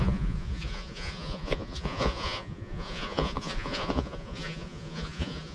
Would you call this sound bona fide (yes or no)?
no